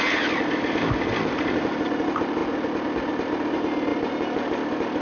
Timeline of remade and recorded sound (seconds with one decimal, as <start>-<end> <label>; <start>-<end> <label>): 0.0-5.0 recorded